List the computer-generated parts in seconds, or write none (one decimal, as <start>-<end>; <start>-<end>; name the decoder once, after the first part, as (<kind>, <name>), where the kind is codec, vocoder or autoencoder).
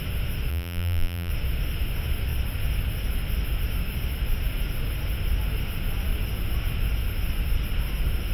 0.5-1.3 (vocoder, BigVGAN v2)